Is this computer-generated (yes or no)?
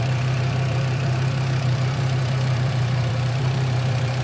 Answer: yes